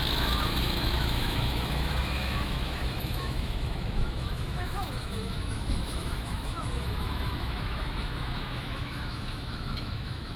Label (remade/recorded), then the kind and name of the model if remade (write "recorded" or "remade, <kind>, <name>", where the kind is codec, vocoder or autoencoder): remade, autoencoder, DAC-VAE